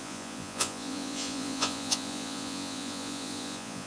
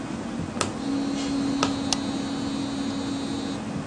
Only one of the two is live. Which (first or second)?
second